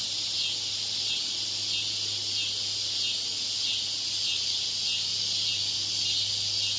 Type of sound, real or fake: real